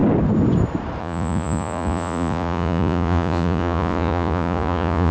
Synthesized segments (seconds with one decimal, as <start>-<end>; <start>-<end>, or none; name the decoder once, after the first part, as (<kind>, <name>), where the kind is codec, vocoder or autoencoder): 1.0-5.1 (vocoder, Vocos)